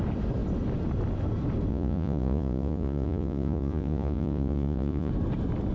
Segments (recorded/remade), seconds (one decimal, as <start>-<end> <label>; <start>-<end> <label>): 0.0-1.7 recorded; 1.7-5.1 remade; 5.1-5.7 recorded